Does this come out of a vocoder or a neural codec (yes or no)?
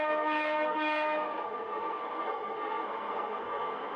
yes